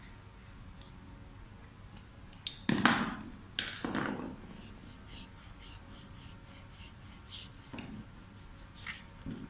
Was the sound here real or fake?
real